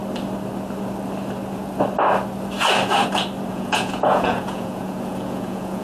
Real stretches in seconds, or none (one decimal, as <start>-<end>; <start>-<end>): 0.0-3.5